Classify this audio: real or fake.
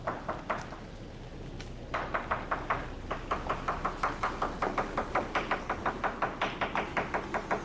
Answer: real